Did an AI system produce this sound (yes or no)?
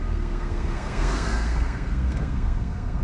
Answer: yes